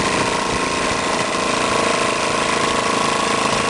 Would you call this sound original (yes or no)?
no